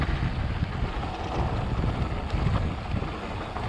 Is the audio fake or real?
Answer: real